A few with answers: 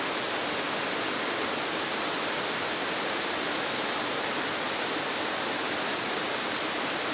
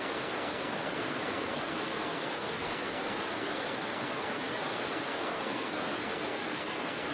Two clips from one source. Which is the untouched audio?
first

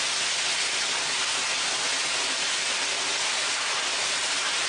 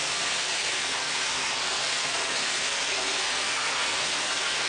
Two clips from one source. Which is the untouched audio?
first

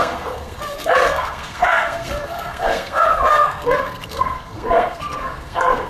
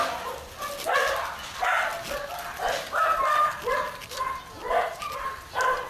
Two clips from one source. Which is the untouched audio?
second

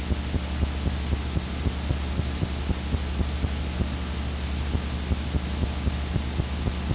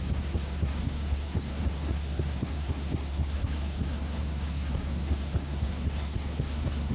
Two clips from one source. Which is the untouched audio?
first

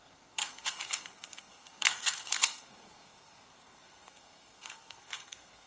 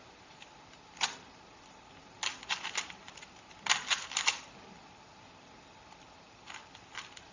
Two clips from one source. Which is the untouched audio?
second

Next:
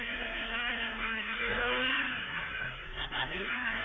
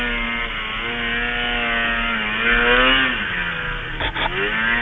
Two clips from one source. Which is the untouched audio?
second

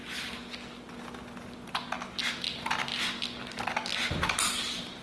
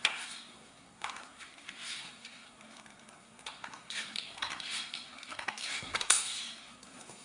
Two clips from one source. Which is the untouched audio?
first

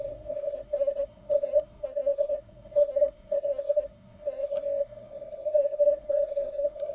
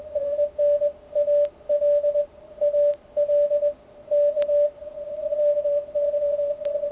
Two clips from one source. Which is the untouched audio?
second